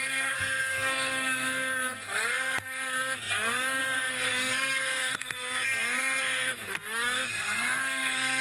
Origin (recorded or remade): remade